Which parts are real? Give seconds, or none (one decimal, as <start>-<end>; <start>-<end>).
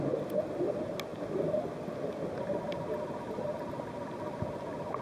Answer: 0.0-5.0